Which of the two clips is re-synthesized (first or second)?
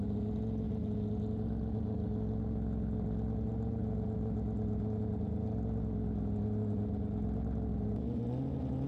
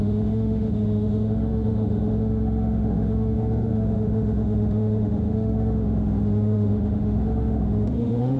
second